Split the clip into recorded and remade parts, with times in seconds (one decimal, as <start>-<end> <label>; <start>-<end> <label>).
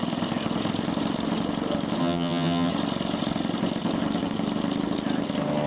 0.0-2.0 recorded; 2.0-2.7 remade; 2.7-5.7 recorded